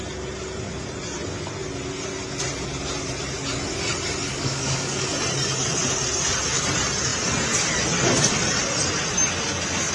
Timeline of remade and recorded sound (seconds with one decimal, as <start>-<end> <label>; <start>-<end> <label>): 0.0-4.3 recorded; 4.3-5.1 remade; 5.1-9.9 recorded